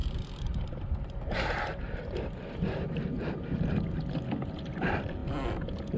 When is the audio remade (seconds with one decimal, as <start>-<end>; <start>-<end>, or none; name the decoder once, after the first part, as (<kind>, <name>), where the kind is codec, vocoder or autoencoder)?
0.0-3.6 (vocoder, BigVGAN v2)